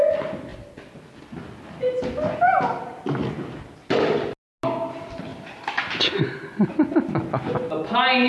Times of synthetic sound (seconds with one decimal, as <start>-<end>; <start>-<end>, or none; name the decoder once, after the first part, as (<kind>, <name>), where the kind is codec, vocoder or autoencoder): 5.3-6.4 (vocoder, BigVGAN v2)